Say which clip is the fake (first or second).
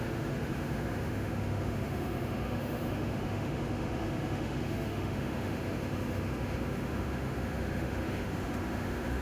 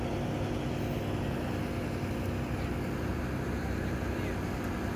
first